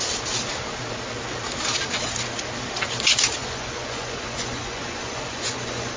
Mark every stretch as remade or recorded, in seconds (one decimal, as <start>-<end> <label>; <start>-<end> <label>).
0.0-3.4 recorded; 3.4-6.0 remade